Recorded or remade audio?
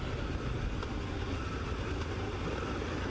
recorded